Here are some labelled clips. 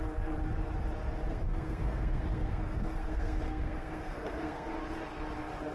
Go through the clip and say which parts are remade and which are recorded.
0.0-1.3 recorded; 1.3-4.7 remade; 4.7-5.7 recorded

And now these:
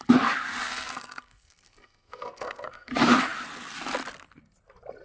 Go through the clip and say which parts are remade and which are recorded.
0.0-0.6 recorded; 0.6-2.9 remade; 2.9-5.0 recorded

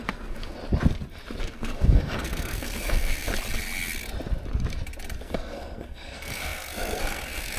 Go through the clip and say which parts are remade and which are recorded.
0.0-0.6 remade; 0.6-1.4 recorded; 1.4-3.3 remade; 3.3-5.2 recorded; 5.2-7.6 remade